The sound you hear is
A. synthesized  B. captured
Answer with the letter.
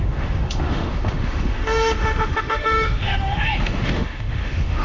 A